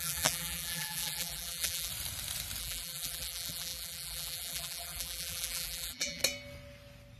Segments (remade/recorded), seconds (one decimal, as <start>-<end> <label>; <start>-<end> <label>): 0.0-1.9 remade; 1.9-2.6 recorded; 2.6-6.2 remade; 6.2-7.2 recorded